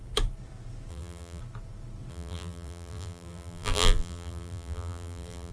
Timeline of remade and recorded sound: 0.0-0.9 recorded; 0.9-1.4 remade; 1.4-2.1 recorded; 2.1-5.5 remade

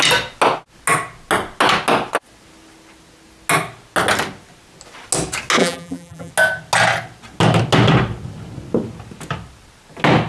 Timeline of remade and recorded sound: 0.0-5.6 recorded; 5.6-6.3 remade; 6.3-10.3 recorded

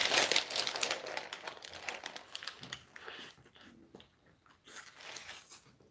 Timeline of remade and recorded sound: 0.0-5.9 recorded